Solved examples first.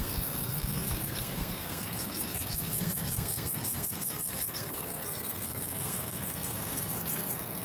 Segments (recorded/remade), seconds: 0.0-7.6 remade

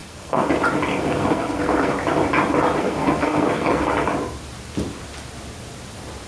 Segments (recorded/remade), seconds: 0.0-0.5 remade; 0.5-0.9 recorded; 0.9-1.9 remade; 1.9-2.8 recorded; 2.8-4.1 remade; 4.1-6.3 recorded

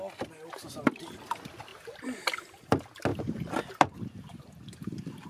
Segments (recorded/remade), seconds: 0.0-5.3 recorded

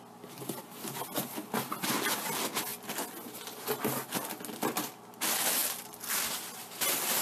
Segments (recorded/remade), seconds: 0.0-7.2 recorded